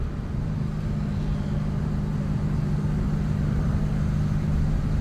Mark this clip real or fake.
real